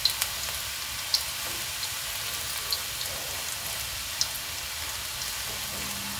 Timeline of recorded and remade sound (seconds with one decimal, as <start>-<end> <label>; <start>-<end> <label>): 0.0-6.2 recorded